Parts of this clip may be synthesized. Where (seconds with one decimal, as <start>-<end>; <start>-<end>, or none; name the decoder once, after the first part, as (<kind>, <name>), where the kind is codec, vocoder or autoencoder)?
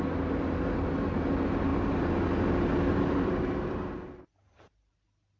none